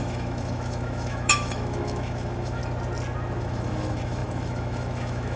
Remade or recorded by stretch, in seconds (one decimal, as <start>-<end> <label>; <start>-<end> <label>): 0.0-2.6 remade; 2.6-3.4 recorded; 3.4-5.4 remade

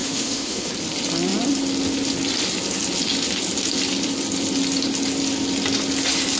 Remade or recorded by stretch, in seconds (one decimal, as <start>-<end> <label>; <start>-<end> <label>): 0.0-0.7 remade; 0.7-6.4 recorded

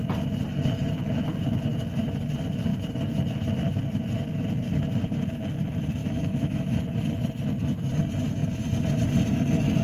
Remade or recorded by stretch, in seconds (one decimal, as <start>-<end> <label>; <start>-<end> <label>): 0.0-6.0 recorded; 6.0-6.8 remade; 6.8-9.8 recorded

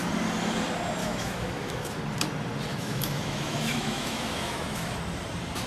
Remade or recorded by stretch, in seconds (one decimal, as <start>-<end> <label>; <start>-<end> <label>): 0.0-1.0 recorded; 1.0-2.0 remade; 2.0-2.7 recorded; 2.7-4.9 remade; 4.9-5.7 recorded

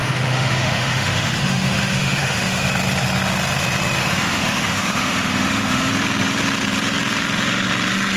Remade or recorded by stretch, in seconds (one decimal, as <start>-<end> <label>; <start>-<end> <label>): 0.0-2.7 remade; 2.7-4.0 recorded; 4.0-5.9 remade; 5.9-8.2 recorded

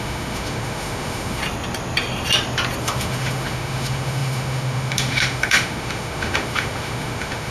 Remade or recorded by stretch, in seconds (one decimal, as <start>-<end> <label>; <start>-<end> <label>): 0.0-1.4 remade; 1.4-2.8 recorded; 2.8-7.5 remade